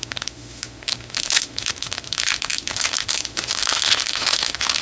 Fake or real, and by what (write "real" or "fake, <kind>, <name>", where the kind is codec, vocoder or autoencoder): fake, autoencoder, DAC-VAE